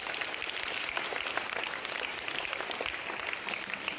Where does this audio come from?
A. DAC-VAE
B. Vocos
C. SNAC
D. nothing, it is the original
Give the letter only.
D